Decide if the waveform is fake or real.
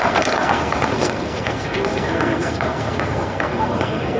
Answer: fake